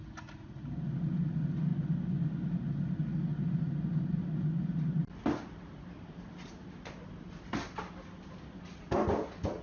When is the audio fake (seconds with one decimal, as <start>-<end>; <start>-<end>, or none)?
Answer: none